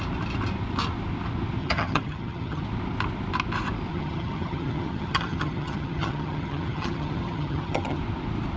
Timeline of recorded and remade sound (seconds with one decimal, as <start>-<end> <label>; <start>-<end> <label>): 0.0-1.6 recorded; 1.6-2.6 remade; 2.6-3.9 recorded; 3.9-8.0 remade; 8.0-8.6 recorded